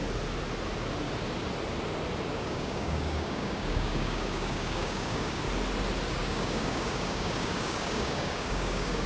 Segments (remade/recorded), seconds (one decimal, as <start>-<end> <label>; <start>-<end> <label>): 0.0-2.3 recorded; 2.3-5.4 remade; 5.4-6.2 recorded; 6.2-9.1 remade